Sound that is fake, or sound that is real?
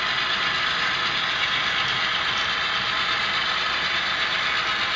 real